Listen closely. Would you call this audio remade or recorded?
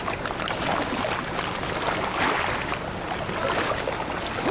recorded